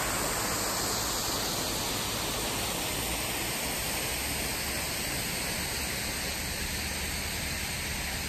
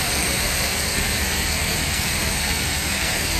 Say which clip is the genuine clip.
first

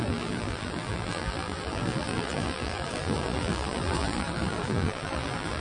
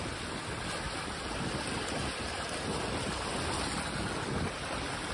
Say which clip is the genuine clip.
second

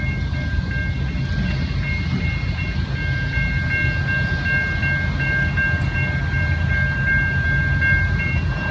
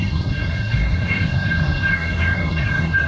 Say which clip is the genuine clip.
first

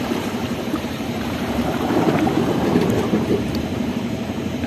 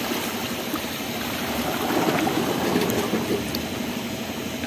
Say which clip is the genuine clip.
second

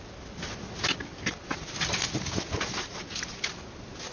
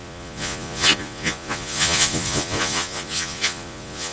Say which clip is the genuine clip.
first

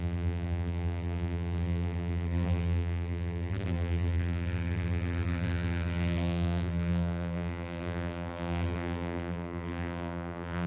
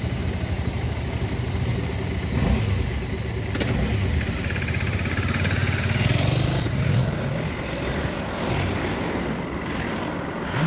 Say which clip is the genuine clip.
second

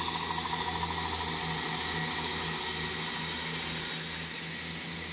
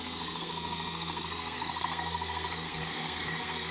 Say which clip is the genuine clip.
first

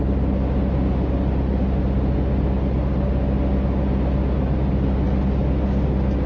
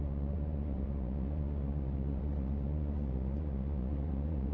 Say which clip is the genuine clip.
first